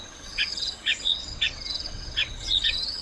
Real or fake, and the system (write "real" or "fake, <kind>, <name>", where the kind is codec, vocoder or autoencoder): fake, vocoder, WaveNeXt